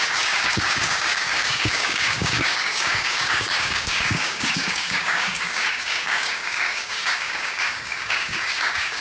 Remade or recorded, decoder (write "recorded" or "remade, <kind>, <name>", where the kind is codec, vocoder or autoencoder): remade, codec, DAC